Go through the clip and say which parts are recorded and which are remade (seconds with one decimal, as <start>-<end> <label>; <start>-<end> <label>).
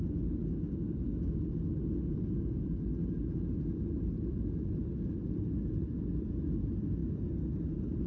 0.0-8.1 recorded